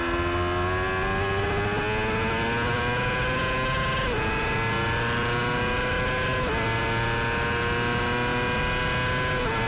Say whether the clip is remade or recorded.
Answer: recorded